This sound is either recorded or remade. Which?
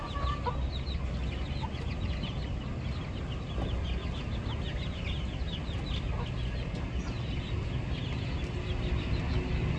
recorded